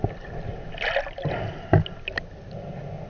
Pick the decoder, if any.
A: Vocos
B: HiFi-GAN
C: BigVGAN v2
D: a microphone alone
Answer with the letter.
D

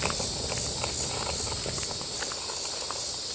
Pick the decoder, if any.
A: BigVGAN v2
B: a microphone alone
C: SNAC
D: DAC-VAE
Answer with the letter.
B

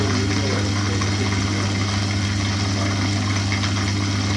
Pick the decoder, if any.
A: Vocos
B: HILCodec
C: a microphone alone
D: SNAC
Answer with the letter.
C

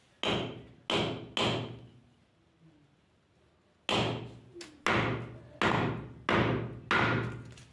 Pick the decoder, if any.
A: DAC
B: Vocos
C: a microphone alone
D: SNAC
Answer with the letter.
C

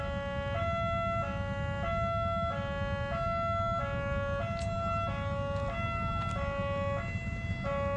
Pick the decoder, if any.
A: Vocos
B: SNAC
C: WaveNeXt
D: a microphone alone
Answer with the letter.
D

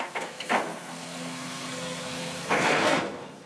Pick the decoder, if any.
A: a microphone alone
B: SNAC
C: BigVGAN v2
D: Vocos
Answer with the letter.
B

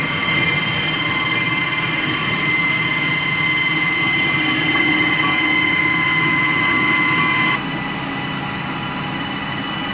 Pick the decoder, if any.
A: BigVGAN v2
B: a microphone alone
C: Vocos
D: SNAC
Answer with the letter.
B